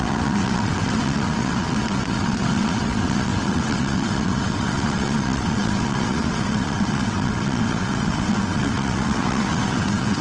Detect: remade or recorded remade